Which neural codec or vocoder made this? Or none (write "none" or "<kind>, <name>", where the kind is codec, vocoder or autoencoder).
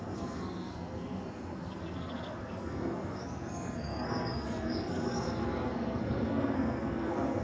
codec, SNAC